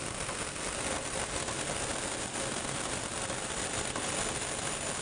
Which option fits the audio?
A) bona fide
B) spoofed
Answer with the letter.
A